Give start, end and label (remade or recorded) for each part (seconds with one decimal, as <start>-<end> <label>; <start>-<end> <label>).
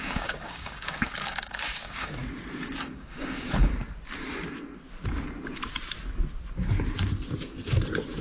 0.0-2.2 remade; 2.2-2.8 recorded; 2.8-3.7 remade; 3.7-8.2 recorded